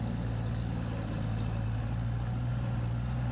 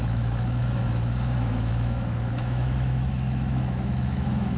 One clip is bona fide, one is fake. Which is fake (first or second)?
second